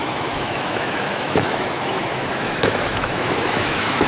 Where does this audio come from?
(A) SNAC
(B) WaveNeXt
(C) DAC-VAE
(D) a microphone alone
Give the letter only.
C